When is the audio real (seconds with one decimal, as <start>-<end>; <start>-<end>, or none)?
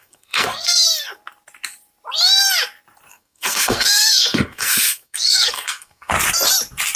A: 1.2-3.1; 6.1-7.0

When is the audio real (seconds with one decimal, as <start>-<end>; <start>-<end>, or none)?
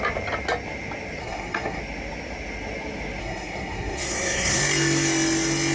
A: 0.0-1.2; 1.8-3.2; 4.6-5.7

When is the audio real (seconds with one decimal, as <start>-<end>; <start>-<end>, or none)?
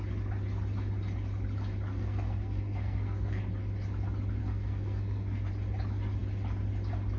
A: 0.0-1.9; 3.4-4.4; 5.5-7.2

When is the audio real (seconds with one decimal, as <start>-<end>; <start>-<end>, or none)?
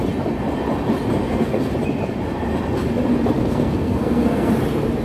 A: 0.0-1.2; 1.7-3.4; 4.5-5.0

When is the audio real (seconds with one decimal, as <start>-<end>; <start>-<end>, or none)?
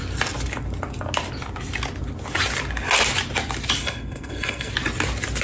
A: 0.0-3.8; 4.7-5.4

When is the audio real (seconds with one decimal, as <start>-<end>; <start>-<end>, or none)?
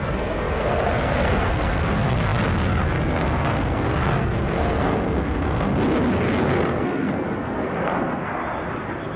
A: 5.7-6.4; 8.4-9.2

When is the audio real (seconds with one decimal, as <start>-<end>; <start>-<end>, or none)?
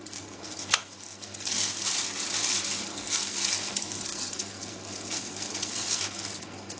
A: 1.7-2.8